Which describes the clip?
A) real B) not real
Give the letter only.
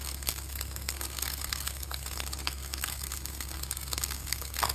B